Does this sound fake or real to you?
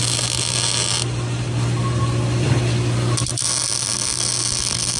real